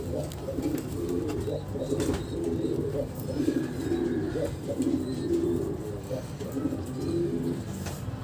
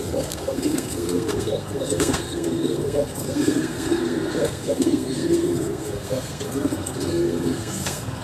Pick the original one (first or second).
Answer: first